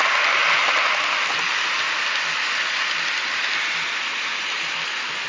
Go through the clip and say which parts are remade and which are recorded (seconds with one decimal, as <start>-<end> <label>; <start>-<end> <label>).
0.0-5.3 recorded